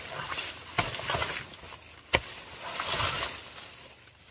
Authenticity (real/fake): real